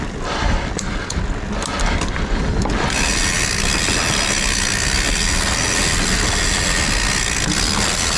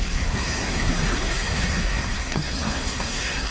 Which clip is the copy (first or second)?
second